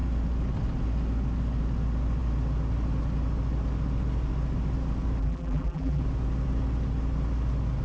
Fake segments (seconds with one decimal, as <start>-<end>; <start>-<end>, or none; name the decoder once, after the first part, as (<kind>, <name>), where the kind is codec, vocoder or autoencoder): 5.2-6.0 (vocoder, BigVGAN v2)